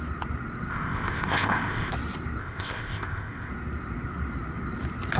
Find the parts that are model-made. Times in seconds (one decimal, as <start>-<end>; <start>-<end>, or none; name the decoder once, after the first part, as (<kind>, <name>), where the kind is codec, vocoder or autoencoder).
0.7-1.9 (codec, ZipCodec); 2.4-3.5